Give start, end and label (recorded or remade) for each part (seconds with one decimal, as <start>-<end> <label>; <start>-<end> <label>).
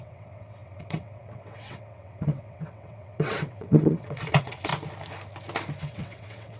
0.0-4.7 remade; 4.7-5.8 recorded; 5.8-6.6 remade